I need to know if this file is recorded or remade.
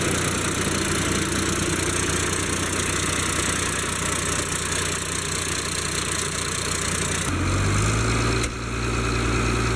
recorded